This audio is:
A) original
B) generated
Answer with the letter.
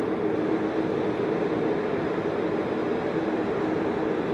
A